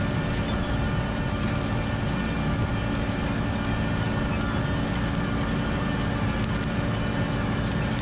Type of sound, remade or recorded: recorded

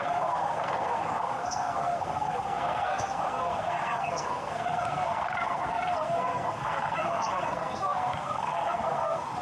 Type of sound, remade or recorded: remade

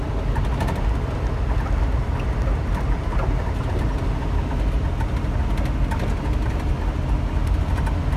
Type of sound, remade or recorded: recorded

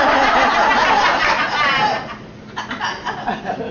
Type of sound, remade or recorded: recorded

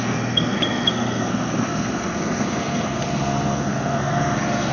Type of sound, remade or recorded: remade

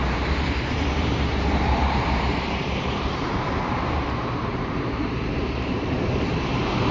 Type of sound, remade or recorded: remade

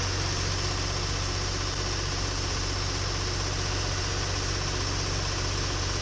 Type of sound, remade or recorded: recorded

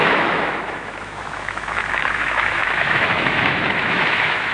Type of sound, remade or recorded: remade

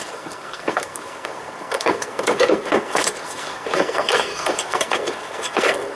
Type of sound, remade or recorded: remade